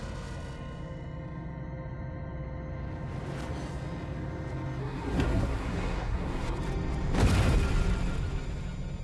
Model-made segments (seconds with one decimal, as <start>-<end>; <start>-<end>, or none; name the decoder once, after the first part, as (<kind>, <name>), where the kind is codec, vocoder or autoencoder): 4.8-6.6 (codec, SNAC)